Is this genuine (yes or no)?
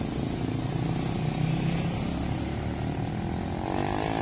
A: yes